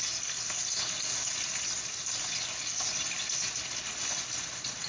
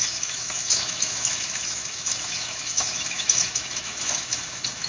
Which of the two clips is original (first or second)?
first